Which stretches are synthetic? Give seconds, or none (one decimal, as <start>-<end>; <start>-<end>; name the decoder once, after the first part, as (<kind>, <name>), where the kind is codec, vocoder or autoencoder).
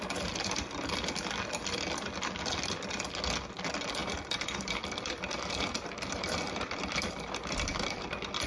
1.6-2.5 (vocoder, BigVGAN v2); 4.0-8.1